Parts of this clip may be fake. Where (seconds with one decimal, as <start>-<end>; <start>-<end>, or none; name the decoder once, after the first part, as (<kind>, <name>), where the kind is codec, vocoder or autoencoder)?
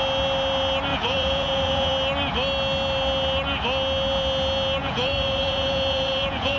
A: 0.9-1.9 (vocoder, Vocos); 4.8-6.6